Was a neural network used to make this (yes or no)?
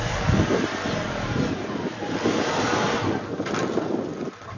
no